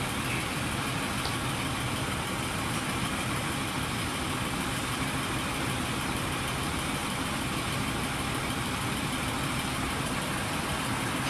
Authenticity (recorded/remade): remade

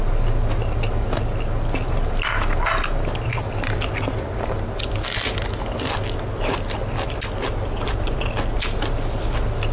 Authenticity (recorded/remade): recorded